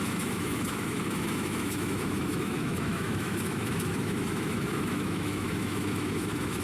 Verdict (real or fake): fake